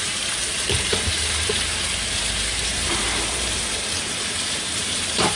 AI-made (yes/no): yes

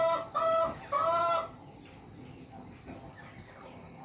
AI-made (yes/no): no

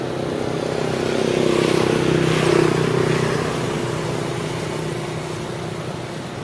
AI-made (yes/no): no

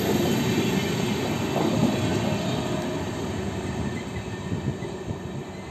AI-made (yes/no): no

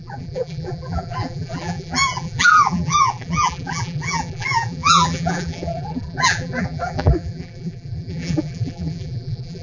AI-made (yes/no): yes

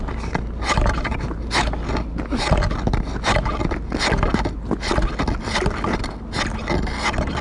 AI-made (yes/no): no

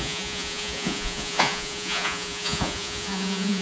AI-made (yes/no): yes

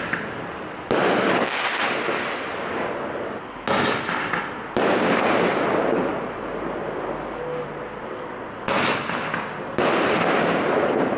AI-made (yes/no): no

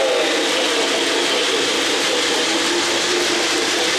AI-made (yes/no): no